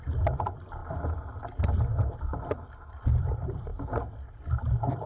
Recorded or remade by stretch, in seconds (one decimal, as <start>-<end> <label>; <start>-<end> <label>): 0.0-3.7 remade; 3.7-4.3 recorded; 4.3-5.1 remade